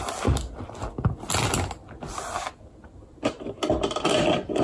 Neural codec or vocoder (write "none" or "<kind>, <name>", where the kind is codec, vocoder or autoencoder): none